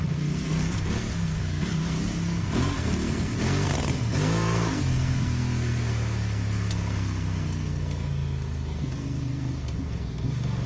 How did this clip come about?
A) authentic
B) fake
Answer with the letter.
B